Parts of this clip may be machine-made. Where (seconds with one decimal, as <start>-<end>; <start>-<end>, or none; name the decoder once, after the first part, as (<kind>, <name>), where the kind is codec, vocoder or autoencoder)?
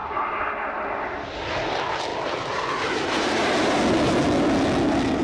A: 0.0-0.5 (vocoder, BigVGAN v2); 2.1-4.2